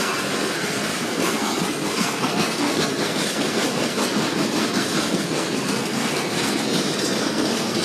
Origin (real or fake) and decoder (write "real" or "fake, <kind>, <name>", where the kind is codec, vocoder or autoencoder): fake, codec, SNAC